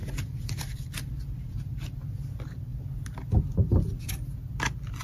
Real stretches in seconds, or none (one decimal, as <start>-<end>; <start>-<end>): 0.6-5.0